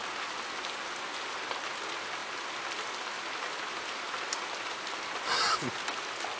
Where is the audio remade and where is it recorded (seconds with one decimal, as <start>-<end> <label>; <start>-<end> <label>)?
0.0-6.4 recorded